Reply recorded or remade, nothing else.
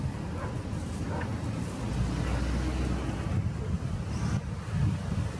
recorded